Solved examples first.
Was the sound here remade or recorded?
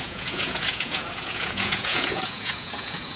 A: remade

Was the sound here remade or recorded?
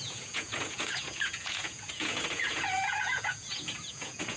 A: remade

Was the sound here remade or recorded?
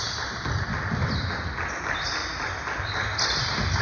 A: recorded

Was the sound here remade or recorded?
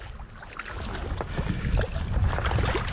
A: recorded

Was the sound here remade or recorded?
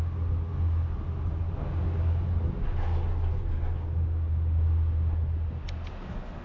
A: recorded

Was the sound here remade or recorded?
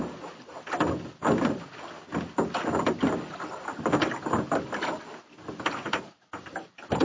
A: recorded